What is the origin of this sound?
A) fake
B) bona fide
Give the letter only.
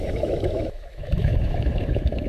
A